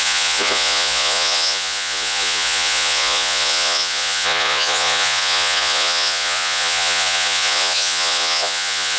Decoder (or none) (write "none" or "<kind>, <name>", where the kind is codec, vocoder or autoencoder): vocoder, Vocos